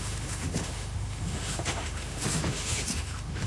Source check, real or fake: fake